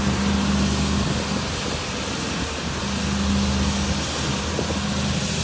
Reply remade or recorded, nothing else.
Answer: recorded